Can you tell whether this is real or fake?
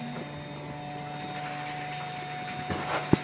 real